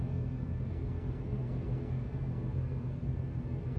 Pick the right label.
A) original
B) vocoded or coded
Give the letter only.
B